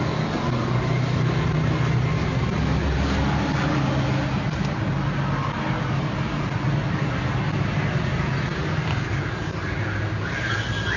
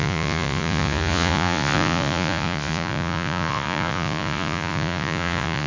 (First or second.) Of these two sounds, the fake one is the second